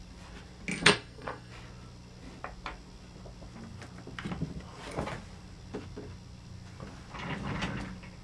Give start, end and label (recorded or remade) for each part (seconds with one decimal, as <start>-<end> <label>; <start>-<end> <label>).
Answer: 0.0-0.8 recorded; 0.8-1.5 remade; 1.5-8.2 recorded